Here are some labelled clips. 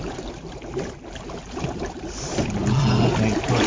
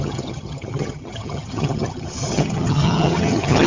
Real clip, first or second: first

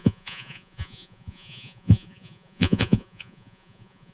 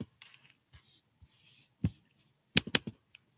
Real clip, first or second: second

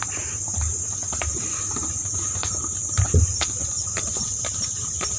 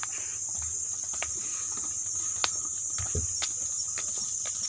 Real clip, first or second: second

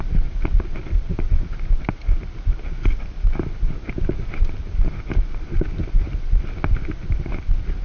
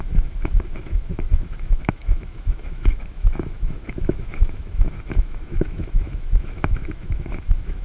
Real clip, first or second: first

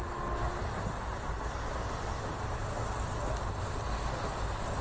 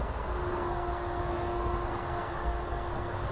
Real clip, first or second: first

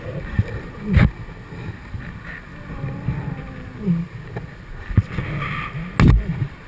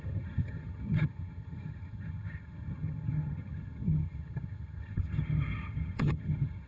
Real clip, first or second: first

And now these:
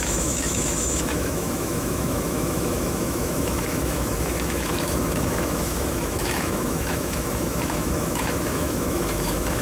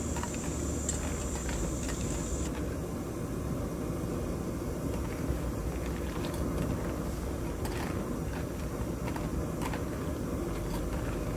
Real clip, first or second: second